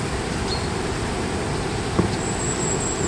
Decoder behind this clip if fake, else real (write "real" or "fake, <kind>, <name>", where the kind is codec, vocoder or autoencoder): real